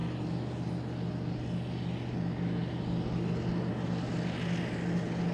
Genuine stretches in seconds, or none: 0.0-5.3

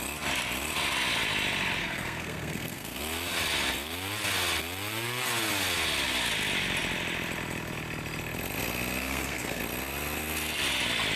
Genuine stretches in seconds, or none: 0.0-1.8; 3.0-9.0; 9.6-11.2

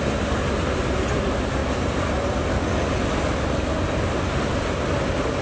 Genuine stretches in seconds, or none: 0.0-5.4

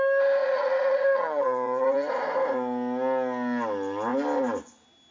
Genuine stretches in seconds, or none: 0.0-0.4; 2.1-5.1

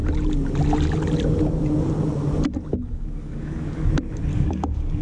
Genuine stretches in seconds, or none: 0.0-2.7; 3.9-4.3